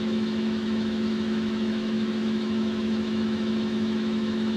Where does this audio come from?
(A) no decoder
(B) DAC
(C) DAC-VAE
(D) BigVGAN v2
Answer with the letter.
C